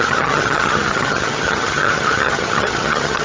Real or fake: fake